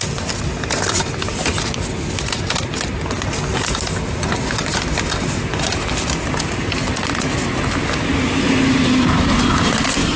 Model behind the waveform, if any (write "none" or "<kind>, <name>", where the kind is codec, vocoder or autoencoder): none